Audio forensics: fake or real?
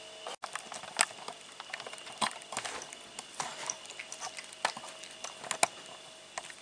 real